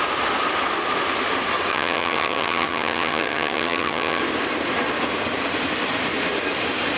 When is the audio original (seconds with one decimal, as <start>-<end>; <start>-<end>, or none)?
0.0-1.7; 4.2-7.0